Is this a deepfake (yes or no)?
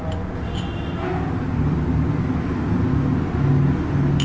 no